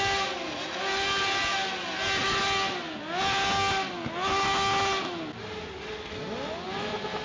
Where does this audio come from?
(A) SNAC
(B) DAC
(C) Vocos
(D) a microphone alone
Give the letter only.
D